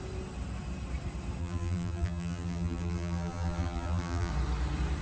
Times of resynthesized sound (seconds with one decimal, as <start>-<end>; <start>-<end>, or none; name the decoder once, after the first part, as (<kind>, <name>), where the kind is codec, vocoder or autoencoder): 1.4-4.3 (vocoder, BigVGAN v2)